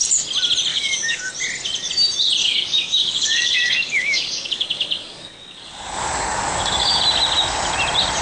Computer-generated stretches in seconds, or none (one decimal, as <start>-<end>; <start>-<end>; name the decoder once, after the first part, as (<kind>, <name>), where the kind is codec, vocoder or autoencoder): 0.7-1.3 (codec, DAC); 2.4-7.0